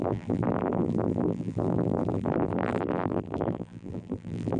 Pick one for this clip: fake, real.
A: fake